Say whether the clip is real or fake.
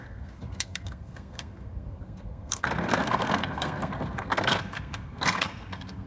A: fake